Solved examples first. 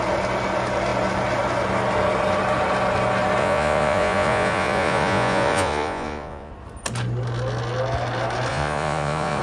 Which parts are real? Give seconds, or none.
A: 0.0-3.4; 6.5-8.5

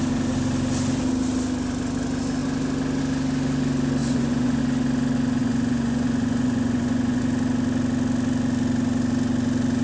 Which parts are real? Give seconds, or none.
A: 0.0-4.0; 4.6-5.4; 7.2-9.8

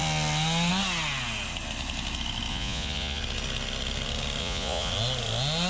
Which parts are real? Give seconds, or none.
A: 0.0-2.5; 3.2-4.4; 4.9-5.7

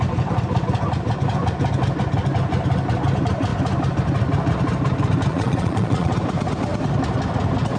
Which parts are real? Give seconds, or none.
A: 0.0-5.3; 6.1-7.8

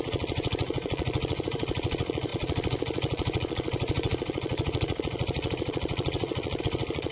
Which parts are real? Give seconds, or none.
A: none

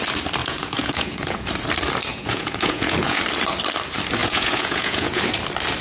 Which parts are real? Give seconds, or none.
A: 0.0-0.4; 1.5-2.1; 3.2-4.2; 5.2-5.8